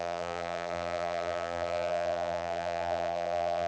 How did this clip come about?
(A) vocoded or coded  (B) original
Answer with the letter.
A